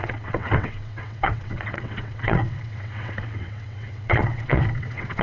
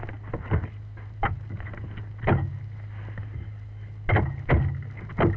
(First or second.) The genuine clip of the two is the second